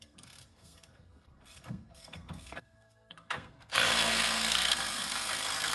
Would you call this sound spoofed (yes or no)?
yes